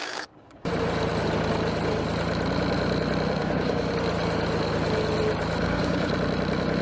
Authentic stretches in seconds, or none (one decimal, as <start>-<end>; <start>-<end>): 0.7-3.4; 3.9-5.6; 6.1-6.8